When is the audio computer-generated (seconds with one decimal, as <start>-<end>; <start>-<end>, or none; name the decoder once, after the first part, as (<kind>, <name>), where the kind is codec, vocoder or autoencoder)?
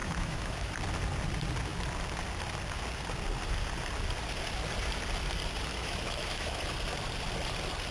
0.0-0.7 (autoencoder, DAC-VAE); 5.7-6.6